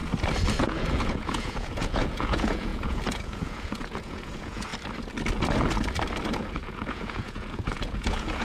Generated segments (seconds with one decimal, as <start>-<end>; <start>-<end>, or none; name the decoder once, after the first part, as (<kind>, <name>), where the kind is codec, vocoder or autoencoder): 0.6-4.7 (vocoder, Vocos); 6.3-8.4